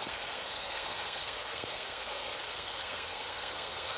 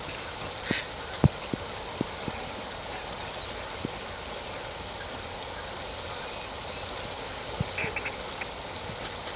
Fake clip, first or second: first